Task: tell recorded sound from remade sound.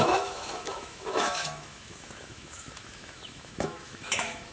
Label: remade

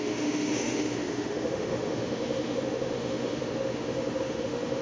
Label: remade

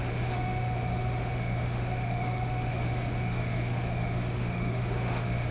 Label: remade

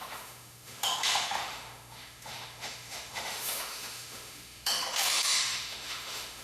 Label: remade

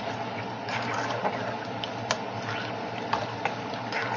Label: recorded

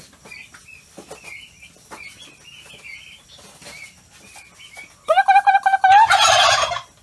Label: recorded